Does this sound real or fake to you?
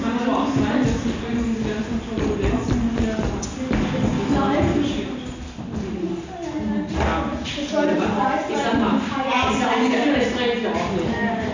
real